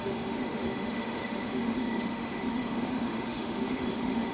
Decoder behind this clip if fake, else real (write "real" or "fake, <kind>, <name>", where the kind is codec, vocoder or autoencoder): fake, autoencoder, DAC-VAE